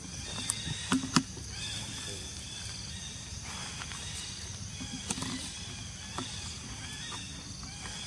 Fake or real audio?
real